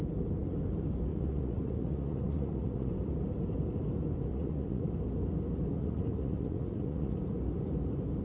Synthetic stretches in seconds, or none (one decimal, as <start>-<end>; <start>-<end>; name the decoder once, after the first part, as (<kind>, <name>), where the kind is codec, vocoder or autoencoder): 1.1-2.9 (vocoder, Vocos); 4.3-4.9; 5.8-7.2